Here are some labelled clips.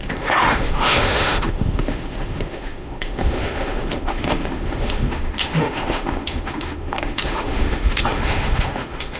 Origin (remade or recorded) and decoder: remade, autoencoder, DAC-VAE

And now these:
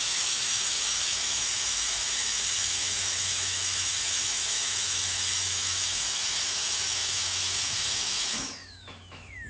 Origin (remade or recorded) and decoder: remade, autoencoder, DAC-VAE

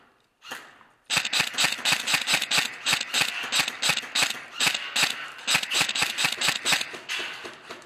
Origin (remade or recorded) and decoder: recorded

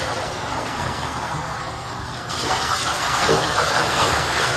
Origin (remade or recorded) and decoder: remade, codec, SNAC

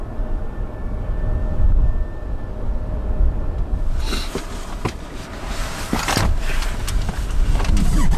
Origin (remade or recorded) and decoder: recorded